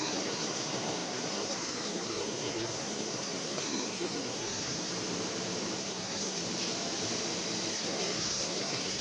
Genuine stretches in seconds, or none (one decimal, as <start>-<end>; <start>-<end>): 4.9-5.8; 6.4-7.7